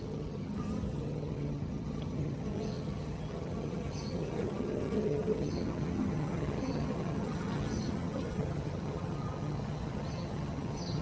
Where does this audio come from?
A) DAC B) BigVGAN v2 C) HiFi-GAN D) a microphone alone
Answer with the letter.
C